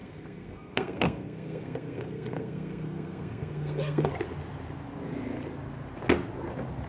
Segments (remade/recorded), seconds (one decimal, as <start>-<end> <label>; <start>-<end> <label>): 0.0-4.1 remade; 4.1-6.9 recorded